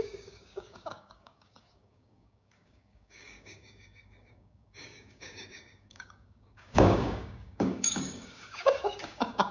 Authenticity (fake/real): fake